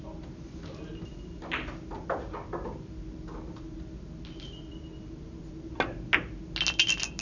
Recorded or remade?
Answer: recorded